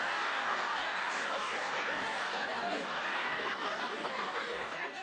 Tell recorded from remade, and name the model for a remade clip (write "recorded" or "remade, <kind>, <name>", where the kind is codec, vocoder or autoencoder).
remade, codec, DAC